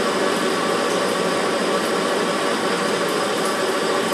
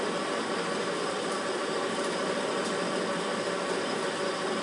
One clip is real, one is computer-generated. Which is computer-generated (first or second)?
second